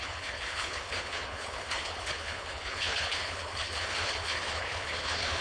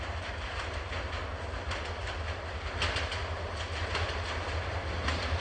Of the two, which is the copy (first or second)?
first